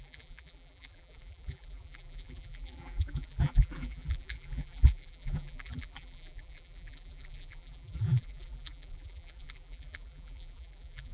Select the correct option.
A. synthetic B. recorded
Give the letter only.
A